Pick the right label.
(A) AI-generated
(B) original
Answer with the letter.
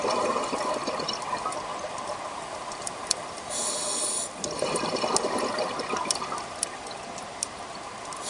B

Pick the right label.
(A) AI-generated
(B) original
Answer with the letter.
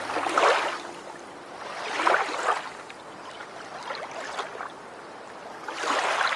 B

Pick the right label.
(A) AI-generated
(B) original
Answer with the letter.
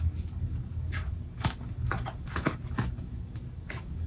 A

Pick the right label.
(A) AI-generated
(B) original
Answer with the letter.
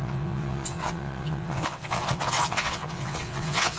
A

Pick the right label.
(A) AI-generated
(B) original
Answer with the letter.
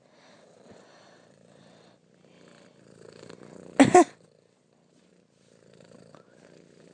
B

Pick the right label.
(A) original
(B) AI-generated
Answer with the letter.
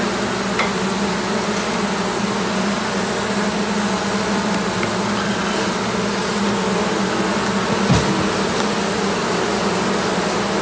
A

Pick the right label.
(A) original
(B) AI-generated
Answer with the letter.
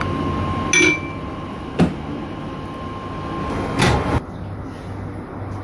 A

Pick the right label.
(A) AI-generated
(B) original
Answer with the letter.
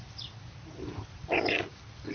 B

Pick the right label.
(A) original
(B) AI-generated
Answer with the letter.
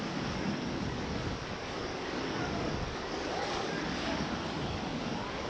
B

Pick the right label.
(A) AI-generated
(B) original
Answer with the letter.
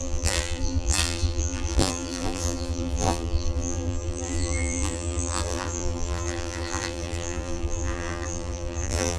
A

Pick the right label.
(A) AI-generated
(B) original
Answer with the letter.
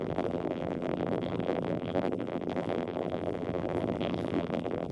A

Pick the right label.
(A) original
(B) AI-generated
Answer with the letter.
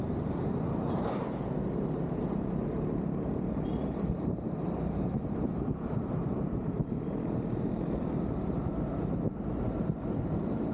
B